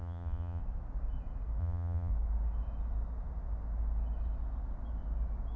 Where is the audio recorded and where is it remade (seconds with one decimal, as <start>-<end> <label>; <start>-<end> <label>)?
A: 0.0-0.6 remade; 0.6-1.6 recorded; 1.6-2.1 remade; 2.1-5.6 recorded